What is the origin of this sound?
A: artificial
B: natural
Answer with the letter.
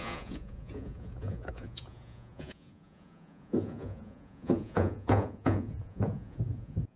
A